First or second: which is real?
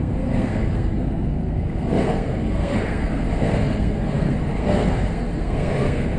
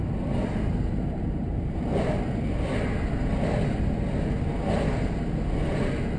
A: second